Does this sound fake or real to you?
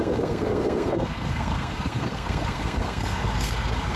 fake